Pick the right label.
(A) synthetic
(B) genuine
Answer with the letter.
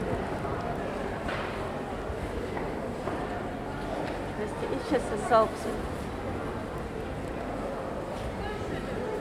B